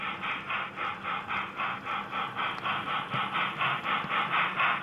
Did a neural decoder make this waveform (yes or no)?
no